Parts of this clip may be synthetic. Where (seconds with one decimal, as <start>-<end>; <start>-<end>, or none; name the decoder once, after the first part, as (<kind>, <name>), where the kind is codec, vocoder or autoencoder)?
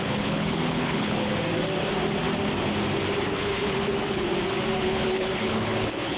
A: 0.0-1.3 (codec, HILCodec); 3.2-4.3; 4.8-6.2